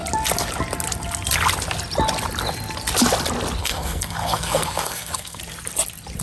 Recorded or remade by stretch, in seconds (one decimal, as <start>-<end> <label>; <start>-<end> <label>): 0.0-3.6 recorded; 3.6-5.4 remade; 5.4-6.2 recorded